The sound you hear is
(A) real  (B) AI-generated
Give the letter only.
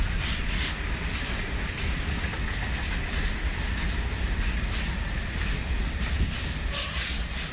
A